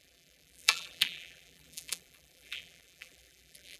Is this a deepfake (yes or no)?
yes